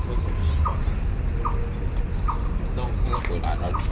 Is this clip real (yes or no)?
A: yes